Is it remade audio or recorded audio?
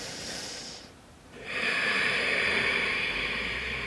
remade